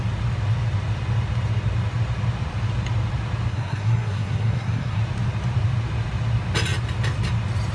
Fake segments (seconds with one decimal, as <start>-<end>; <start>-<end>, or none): 3.5-5.0